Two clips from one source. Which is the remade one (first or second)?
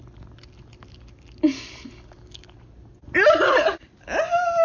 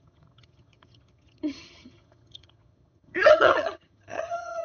second